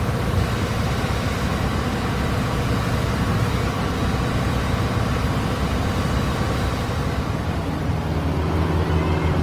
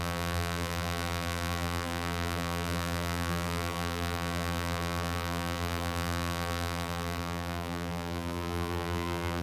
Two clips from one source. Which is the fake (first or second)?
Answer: second